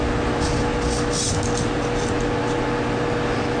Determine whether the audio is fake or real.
real